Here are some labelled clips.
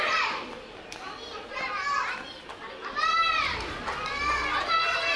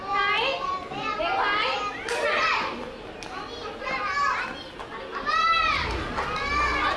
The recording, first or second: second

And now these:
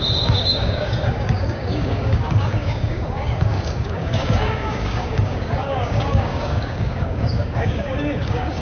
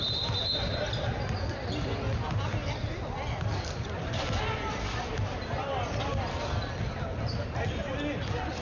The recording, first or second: second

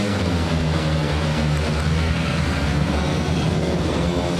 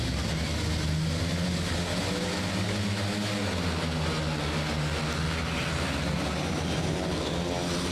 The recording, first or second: second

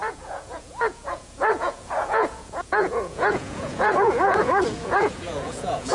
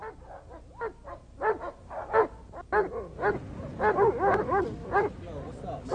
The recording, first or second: second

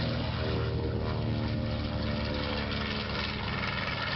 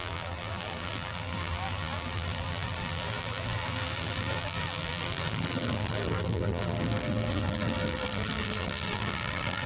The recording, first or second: first